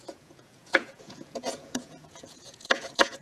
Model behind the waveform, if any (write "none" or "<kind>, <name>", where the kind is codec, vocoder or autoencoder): vocoder, Vocos